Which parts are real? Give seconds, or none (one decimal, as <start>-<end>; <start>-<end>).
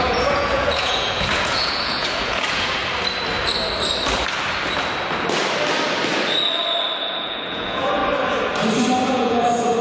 2.8-7.0; 8.0-9.1